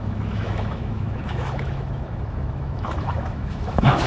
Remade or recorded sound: remade